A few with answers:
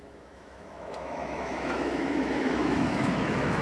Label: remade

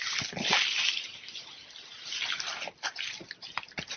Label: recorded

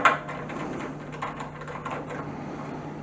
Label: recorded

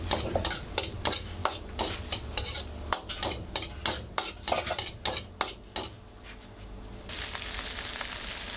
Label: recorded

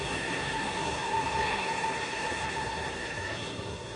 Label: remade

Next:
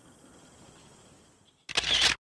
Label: recorded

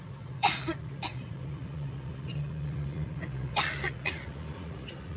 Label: remade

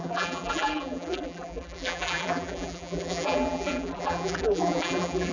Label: remade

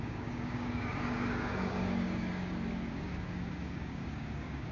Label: remade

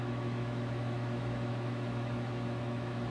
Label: remade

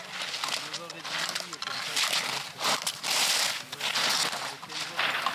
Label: recorded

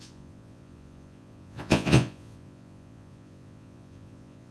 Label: remade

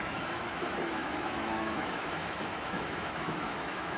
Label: remade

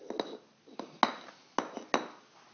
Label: recorded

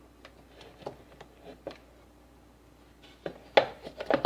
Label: recorded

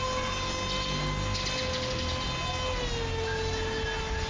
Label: recorded